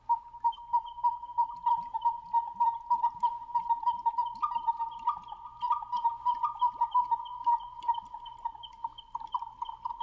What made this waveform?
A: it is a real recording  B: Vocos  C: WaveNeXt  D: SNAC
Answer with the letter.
A